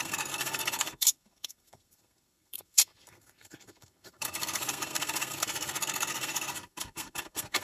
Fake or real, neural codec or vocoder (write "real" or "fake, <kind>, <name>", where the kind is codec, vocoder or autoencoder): fake, codec, SNAC